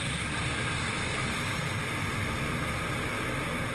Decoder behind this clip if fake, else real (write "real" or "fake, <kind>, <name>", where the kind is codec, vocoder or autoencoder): real